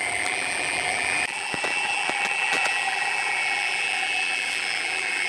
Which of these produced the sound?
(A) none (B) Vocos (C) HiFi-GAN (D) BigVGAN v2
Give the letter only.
D